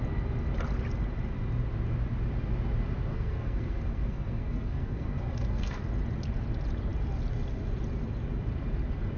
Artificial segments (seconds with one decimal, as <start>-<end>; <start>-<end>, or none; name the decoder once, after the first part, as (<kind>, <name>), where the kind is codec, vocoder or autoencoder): 3.1-5.8 (codec, SNAC)